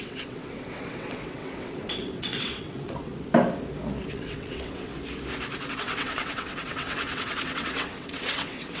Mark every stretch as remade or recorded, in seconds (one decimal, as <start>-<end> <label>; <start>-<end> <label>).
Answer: 0.0-3.1 remade; 3.1-4.1 recorded; 4.1-4.9 remade; 4.9-5.7 recorded; 5.7-8.8 remade

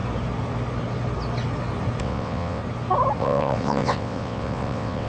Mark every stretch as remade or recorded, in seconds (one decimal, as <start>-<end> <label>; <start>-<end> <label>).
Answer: 0.0-2.0 recorded; 2.0-2.6 remade; 2.6-3.2 recorded; 3.2-5.1 remade

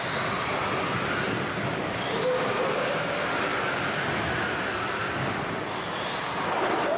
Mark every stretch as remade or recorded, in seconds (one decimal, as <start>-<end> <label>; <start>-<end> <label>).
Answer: 0.0-7.0 recorded

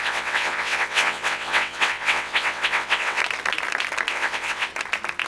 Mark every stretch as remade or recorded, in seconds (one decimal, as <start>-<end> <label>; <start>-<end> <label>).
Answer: 0.0-3.2 remade; 3.2-4.1 recorded; 4.1-4.7 remade; 4.7-5.3 recorded